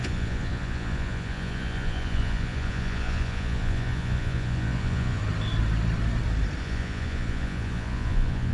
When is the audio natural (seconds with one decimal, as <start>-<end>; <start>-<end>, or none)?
5.2-6.6